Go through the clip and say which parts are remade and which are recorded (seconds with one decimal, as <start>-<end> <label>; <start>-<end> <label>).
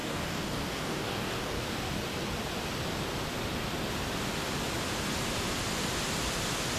0.0-1.6 remade; 1.6-6.8 recorded